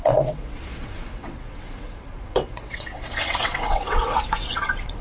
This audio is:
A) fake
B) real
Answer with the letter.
A